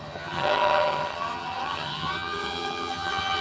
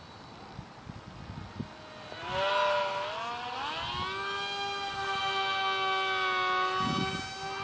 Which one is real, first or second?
second